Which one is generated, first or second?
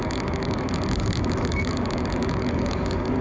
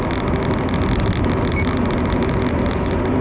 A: first